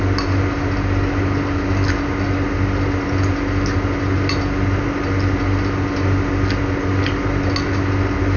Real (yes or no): yes